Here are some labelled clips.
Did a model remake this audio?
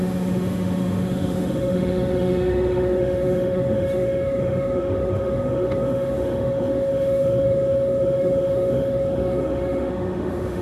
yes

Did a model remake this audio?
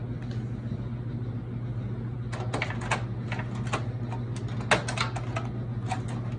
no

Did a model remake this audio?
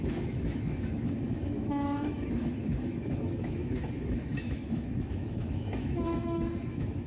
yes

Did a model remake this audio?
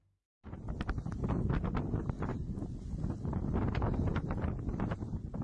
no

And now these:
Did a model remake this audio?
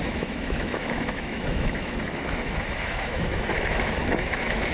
yes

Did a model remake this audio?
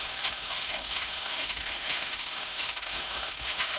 yes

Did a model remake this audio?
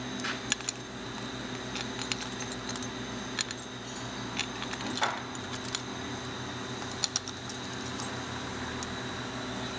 no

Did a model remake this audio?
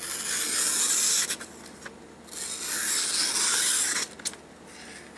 no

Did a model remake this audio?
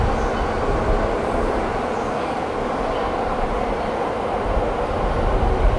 no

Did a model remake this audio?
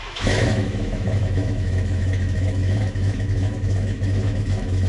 yes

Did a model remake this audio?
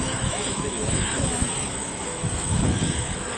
yes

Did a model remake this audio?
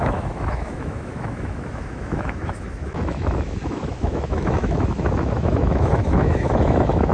yes